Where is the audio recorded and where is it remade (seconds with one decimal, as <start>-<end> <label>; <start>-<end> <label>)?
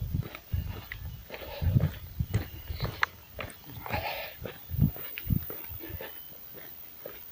0.0-1.2 recorded; 1.2-5.6 remade; 5.6-7.3 recorded